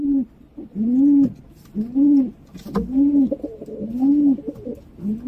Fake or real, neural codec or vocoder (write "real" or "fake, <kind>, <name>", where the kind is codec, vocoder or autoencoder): real